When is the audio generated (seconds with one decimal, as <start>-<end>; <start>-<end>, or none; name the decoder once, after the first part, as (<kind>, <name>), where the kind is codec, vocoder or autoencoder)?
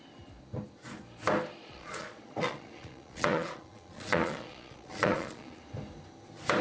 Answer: 1.6-5.6 (vocoder, Vocos)